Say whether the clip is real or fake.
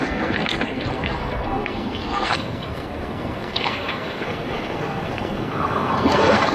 fake